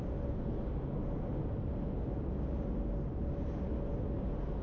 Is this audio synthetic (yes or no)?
no